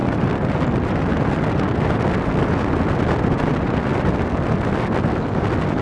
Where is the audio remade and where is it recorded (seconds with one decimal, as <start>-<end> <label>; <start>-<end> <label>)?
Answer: 0.0-5.8 recorded